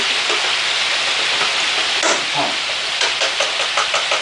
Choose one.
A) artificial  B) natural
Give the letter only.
B